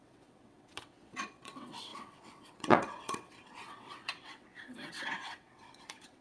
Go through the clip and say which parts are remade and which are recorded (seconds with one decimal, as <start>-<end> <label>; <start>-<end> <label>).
0.0-6.2 remade